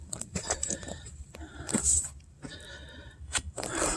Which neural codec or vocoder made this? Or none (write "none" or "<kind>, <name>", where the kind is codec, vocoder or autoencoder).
vocoder, BigVGAN v2